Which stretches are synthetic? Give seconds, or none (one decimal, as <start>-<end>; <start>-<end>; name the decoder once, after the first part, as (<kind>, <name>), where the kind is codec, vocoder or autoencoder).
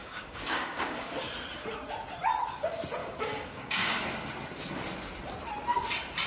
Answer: 0.0-1.1 (codec, DAC); 3.0-4.0